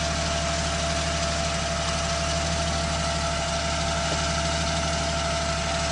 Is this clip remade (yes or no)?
no